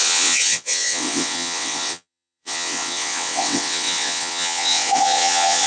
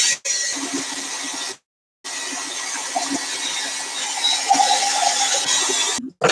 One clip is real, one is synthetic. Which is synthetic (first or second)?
first